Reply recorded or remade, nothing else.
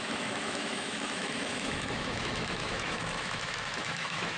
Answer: remade